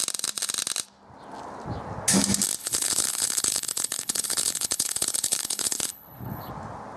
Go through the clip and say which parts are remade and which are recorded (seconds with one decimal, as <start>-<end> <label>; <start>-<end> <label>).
0.0-2.6 recorded; 2.6-6.5 remade; 6.5-7.0 recorded